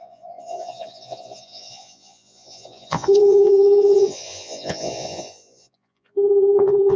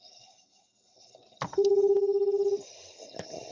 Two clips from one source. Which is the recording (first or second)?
second